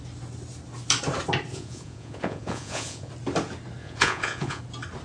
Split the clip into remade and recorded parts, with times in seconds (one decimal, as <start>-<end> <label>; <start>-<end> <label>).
0.0-1.5 recorded; 1.5-3.1 remade; 3.1-3.8 recorded; 3.8-4.6 remade; 4.6-5.0 recorded

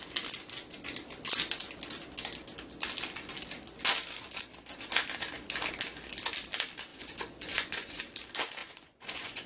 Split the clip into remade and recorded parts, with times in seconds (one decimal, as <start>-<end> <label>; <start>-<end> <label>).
0.0-6.9 recorded; 6.9-8.0 remade; 8.0-8.6 recorded; 8.6-9.5 remade

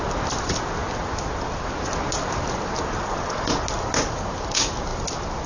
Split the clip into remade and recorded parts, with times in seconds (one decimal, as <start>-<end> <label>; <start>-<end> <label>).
0.0-5.5 recorded

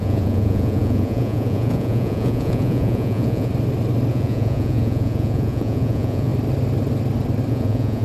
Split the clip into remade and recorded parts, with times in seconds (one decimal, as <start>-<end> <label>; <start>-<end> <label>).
0.0-3.5 remade; 3.5-4.1 recorded; 4.1-6.3 remade; 6.3-7.5 recorded; 7.5-8.0 remade